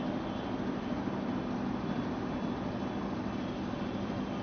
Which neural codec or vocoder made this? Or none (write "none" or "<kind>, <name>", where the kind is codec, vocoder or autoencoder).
none